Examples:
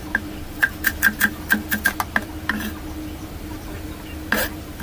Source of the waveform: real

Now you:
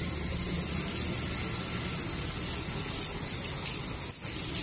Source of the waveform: real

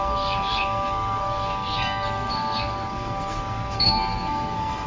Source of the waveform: fake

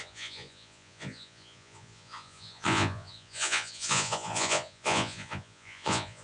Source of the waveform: fake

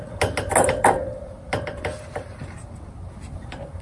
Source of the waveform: real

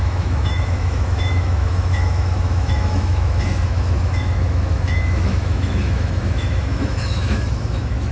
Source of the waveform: fake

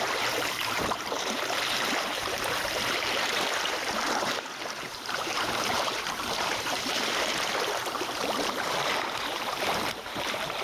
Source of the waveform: fake